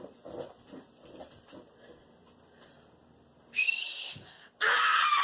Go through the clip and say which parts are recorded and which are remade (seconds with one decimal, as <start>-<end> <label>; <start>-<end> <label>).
0.0-3.6 recorded; 3.6-4.5 remade; 4.5-5.2 recorded